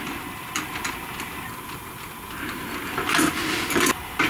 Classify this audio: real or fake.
real